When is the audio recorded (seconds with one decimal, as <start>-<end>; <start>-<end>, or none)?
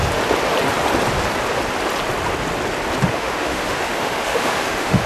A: 0.0-3.1